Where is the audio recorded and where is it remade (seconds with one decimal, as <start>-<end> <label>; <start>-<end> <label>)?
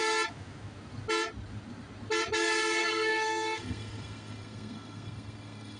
0.0-2.8 recorded; 2.8-5.8 remade